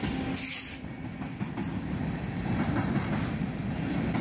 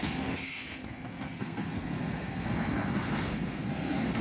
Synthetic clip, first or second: second